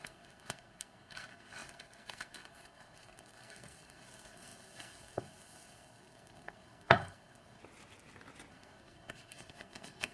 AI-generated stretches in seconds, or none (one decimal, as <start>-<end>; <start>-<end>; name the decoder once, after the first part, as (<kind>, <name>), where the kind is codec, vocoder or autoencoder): 0.0-7.6 (codec, SNAC); 8.5-10.1